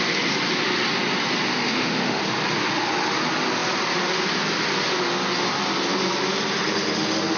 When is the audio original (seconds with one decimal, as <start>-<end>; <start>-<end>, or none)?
0.0-1.6; 2.2-7.4